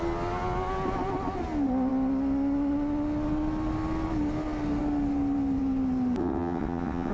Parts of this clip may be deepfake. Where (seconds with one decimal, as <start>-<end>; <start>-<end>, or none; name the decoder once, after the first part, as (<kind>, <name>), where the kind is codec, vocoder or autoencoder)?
6.2-7.1 (vocoder, WaveNeXt)